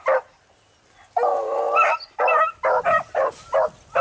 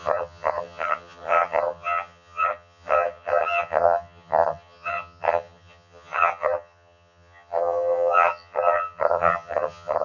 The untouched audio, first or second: first